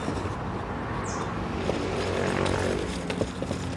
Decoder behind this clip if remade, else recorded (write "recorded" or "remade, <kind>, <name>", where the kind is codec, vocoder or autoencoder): recorded